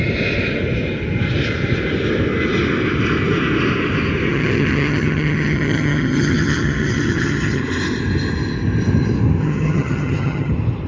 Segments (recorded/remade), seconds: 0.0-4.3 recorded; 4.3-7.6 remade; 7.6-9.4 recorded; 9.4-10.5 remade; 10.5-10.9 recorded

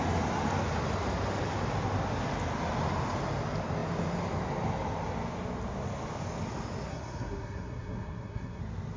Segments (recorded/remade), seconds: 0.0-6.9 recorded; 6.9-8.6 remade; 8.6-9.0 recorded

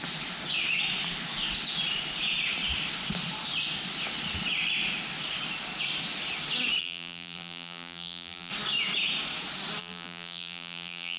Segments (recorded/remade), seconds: 0.0-6.8 recorded; 6.8-8.5 remade; 8.5-9.8 recorded; 9.8-11.2 remade

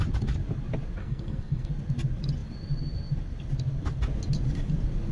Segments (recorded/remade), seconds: 0.0-1.0 recorded; 1.0-1.7 remade; 1.7-5.1 recorded

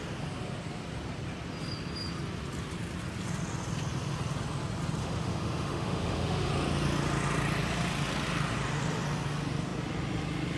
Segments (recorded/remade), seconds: 0.0-5.0 recorded; 5.0-6.5 remade; 6.5-10.6 recorded

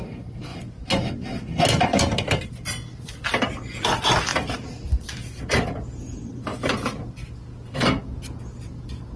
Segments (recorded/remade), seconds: 0.0-0.5 recorded; 0.5-1.0 remade; 1.0-9.2 recorded

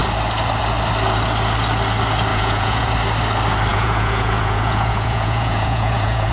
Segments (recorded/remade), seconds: 0.0-2.3 recorded; 2.3-2.9 remade; 2.9-3.7 recorded; 3.7-6.3 remade